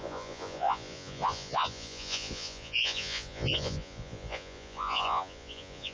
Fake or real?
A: fake